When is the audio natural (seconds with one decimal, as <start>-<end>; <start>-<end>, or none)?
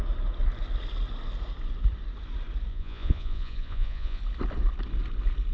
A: 0.0-2.7; 4.2-5.5